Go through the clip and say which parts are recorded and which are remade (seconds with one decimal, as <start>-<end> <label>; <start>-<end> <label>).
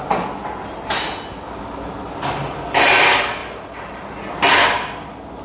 0.0-3.4 recorded; 3.4-4.1 remade; 4.1-5.4 recorded